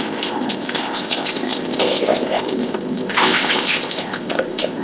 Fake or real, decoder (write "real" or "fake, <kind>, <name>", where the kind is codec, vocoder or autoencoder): fake, codec, ZipCodec